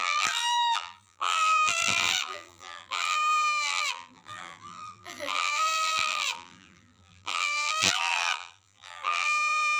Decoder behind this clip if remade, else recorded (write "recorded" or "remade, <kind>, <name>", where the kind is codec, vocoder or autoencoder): remade, vocoder, BigVGAN v2